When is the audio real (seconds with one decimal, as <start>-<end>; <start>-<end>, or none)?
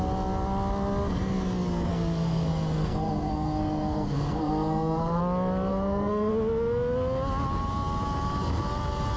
0.0-1.9; 5.2-5.7; 6.3-9.2